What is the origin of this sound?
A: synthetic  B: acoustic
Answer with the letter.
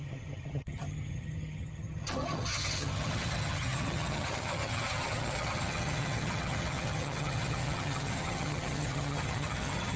A